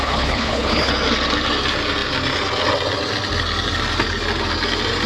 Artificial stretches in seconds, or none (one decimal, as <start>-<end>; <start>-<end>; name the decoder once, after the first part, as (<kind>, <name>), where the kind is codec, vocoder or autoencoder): 0.0-0.9 (codec, HILCodec)